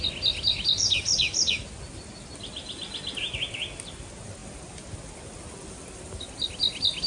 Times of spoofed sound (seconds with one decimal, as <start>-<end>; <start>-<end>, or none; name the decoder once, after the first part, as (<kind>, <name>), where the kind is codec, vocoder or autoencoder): none